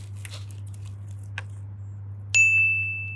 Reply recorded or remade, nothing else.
recorded